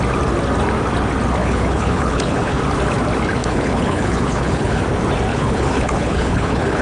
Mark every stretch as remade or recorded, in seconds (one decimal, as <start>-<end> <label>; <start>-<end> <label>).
0.0-1.4 recorded; 1.4-2.6 remade; 2.6-3.4 recorded; 3.4-4.8 remade; 4.8-5.3 recorded; 5.3-6.8 remade